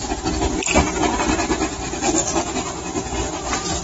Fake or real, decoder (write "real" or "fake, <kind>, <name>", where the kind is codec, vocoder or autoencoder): real